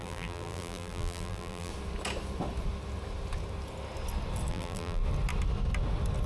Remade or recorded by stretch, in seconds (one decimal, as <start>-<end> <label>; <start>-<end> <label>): 0.0-1.7 remade; 1.7-4.5 recorded; 4.5-5.0 remade; 5.0-6.3 recorded